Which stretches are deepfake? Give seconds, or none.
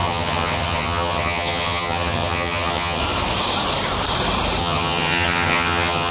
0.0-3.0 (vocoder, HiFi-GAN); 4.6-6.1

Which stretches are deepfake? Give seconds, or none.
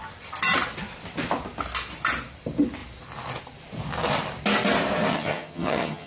5.1-6.1 (vocoder, HiFi-GAN)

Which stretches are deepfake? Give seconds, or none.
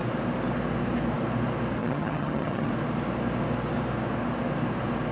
1.8-2.7 (vocoder, HiFi-GAN)